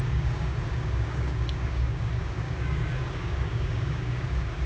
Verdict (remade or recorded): remade